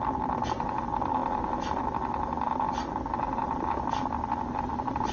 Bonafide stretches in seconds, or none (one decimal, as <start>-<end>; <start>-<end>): 0.0-5.1